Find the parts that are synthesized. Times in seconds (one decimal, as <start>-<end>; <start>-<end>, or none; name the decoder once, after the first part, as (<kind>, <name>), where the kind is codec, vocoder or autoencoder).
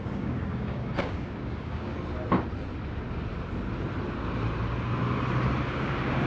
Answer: 0.0-1.9 (codec, DAC); 5.7-6.3